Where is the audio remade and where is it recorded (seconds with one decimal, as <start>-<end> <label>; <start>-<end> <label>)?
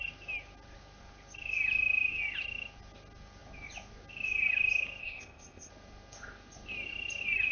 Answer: 0.0-5.0 recorded; 5.0-5.7 remade; 5.7-7.5 recorded